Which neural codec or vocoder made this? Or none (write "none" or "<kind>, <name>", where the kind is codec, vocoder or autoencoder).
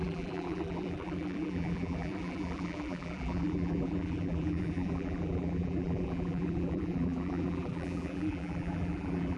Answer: vocoder, BigVGAN v2